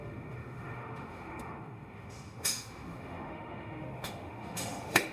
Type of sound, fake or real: fake